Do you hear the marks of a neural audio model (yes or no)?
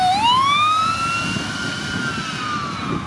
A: no